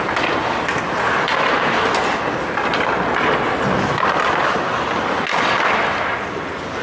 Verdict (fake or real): real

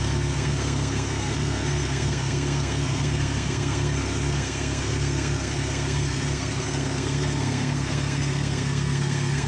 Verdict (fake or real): fake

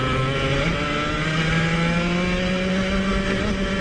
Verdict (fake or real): real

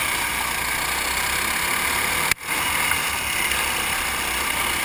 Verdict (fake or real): real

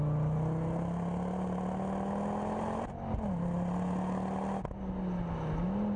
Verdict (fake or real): real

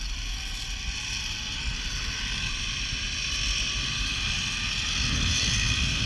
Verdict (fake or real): real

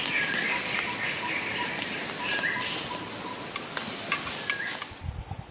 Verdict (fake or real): real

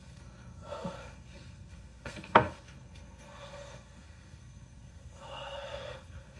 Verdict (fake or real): fake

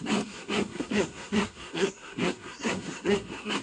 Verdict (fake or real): fake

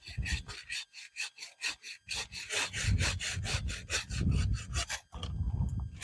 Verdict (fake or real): real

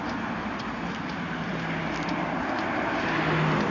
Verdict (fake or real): real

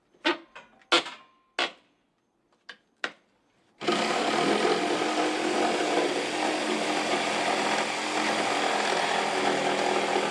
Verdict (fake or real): real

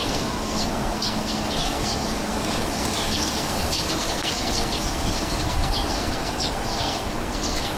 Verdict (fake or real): fake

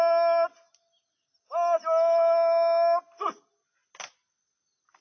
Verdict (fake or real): real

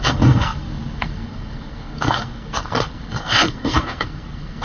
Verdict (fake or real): fake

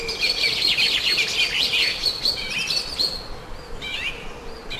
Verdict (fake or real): real